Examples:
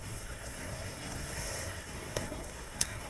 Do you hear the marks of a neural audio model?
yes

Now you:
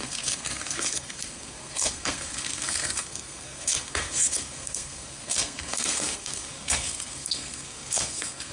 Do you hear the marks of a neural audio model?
yes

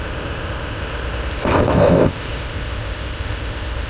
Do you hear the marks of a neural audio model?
yes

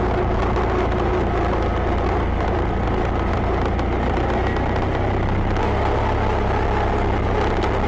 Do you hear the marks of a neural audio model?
no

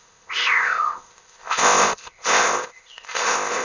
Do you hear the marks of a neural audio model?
yes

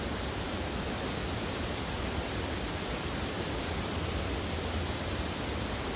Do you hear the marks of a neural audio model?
yes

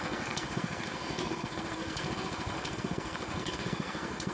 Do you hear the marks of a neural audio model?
yes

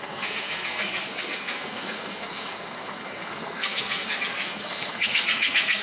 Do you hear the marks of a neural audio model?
yes